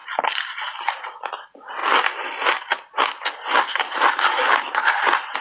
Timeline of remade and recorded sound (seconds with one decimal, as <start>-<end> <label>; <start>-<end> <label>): 0.0-5.4 recorded

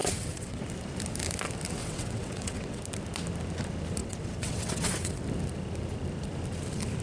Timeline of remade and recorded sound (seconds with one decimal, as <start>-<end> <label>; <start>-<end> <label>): 0.0-0.6 remade; 0.6-1.8 recorded; 1.8-2.8 remade; 2.8-4.0 recorded; 4.0-5.2 remade; 5.2-7.0 recorded

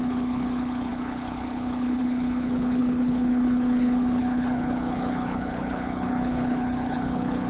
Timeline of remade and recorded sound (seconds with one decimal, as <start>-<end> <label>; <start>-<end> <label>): 0.0-7.5 remade

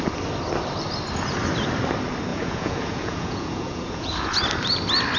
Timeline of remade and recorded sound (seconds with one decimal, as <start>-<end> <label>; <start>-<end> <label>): 0.0-2.3 recorded; 2.3-4.4 remade; 4.4-5.2 recorded

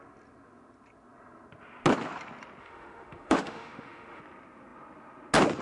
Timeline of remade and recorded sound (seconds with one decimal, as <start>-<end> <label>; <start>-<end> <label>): 0.0-2.6 recorded; 2.6-4.2 remade; 4.2-5.6 recorded

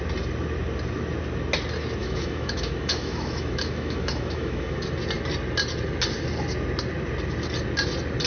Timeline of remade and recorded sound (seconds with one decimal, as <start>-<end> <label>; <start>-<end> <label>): 0.0-2.0 recorded; 2.0-4.8 remade; 4.8-8.3 recorded